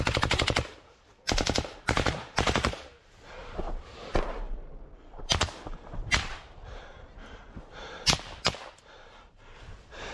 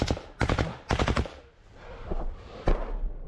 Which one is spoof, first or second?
first